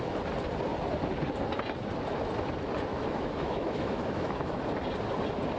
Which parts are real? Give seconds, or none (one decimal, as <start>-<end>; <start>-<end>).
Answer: 0.0-2.9; 4.6-5.6